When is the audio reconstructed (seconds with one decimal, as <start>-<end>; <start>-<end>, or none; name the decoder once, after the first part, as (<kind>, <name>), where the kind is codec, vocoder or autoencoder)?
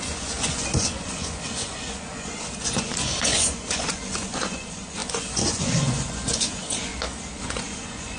0.0-6.9 (vocoder, Vocos); 7.4-8.2